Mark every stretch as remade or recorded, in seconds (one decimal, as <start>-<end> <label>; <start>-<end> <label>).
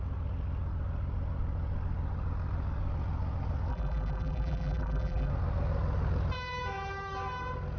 0.0-3.7 recorded; 3.7-5.3 remade; 5.3-7.8 recorded